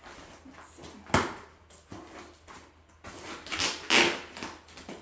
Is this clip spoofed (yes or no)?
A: no